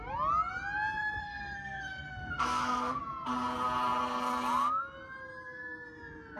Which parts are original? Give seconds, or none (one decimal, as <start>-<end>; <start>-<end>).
0.0-1.2; 3.0-6.4